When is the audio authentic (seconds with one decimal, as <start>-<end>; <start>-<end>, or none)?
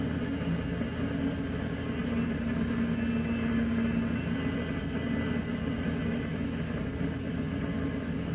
0.0-8.3